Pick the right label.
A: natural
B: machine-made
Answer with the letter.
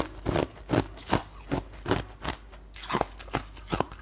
A